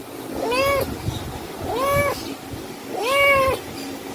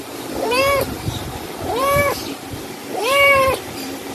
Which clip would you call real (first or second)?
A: first